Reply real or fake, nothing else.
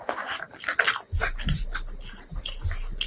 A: real